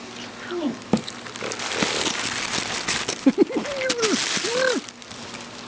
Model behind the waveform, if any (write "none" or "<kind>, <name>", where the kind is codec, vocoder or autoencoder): none